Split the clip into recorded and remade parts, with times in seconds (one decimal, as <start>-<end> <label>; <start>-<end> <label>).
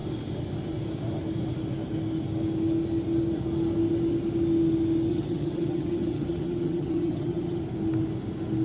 0.0-5.1 recorded; 5.1-7.6 remade; 7.6-8.6 recorded